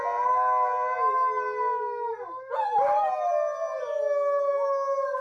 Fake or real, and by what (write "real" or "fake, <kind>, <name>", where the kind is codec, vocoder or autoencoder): real